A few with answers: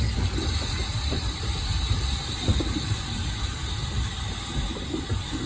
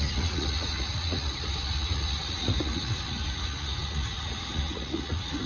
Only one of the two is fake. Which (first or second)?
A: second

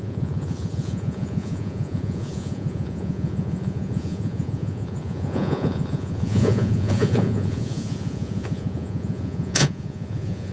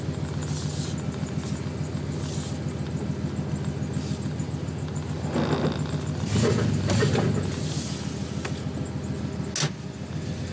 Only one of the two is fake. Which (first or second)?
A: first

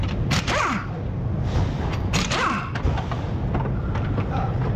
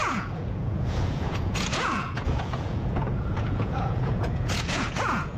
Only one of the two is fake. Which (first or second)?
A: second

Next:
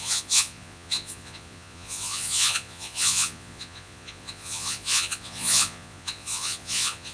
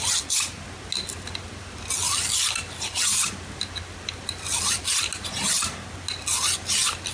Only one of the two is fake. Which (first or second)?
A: first